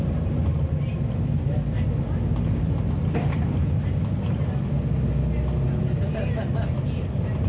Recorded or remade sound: recorded